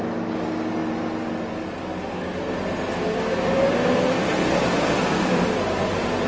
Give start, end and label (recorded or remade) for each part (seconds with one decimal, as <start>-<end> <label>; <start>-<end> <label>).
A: 0.0-6.3 recorded